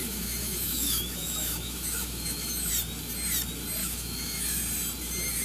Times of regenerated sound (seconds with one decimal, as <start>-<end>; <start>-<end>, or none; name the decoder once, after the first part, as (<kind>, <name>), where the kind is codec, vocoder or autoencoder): 0.0-2.7 (autoencoder, DAC-VAE); 3.8-4.6